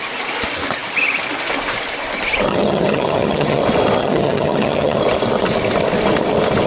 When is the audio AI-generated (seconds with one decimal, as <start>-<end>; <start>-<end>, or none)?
2.5-3.6; 4.0-5.0

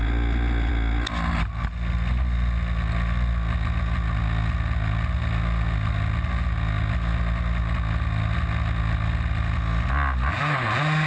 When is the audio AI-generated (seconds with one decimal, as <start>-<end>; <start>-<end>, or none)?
none

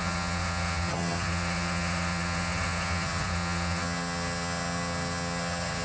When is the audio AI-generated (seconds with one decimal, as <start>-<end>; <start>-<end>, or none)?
0.0-5.8

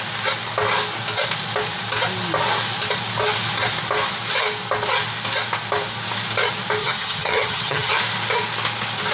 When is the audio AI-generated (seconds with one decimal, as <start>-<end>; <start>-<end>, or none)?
6.8-7.9

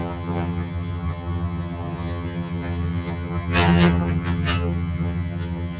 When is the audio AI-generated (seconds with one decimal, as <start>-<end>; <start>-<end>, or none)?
0.0-5.8

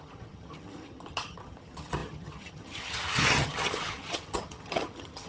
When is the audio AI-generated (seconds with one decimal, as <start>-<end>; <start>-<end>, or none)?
0.0-5.3